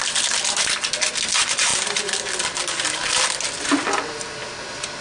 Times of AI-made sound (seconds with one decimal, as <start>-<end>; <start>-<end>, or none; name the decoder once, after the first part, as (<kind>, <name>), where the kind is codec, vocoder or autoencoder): none